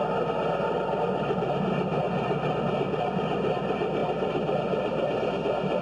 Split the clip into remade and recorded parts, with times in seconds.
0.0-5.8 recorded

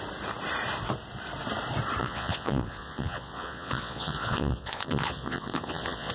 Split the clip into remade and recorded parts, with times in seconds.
0.0-2.0 recorded; 2.0-6.1 remade

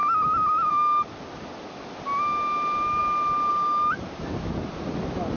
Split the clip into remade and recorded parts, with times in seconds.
0.0-5.4 recorded